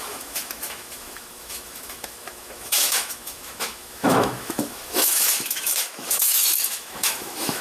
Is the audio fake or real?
fake